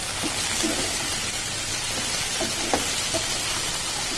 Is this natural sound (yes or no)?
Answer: yes